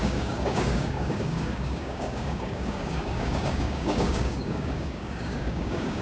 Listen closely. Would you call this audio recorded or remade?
remade